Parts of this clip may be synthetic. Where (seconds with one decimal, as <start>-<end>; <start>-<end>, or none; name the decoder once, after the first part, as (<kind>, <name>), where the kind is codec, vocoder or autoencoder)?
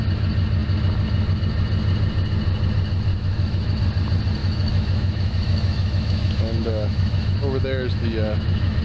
3.1-3.8 (autoencoder, DAC-VAE); 4.4-8.8